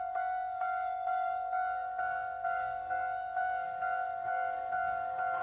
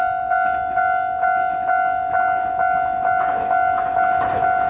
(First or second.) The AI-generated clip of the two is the first